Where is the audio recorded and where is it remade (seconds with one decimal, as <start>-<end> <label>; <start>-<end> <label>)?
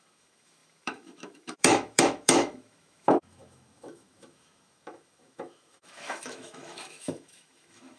0.0-8.0 remade